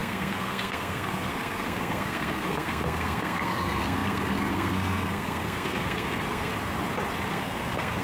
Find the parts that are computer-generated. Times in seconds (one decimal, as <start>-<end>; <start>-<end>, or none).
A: 0.0-6.5; 7.3-8.0